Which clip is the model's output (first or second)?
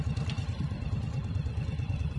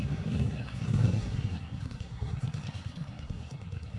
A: second